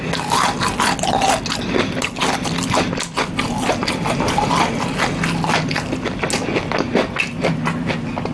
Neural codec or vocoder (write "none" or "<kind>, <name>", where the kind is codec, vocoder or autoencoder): none